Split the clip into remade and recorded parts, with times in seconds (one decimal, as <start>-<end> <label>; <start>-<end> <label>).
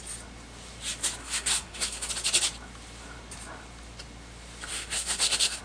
0.0-1.2 recorded; 1.2-2.1 remade; 2.1-4.7 recorded; 4.7-5.6 remade